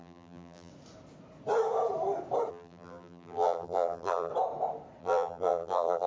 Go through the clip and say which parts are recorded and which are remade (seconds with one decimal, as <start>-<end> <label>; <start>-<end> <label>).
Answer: 0.0-0.7 remade; 0.7-2.5 recorded; 2.5-4.3 remade; 4.3-5.0 recorded; 5.0-6.1 remade